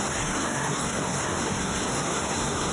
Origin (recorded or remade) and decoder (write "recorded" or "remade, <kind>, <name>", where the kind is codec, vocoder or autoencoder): remade, codec, SNAC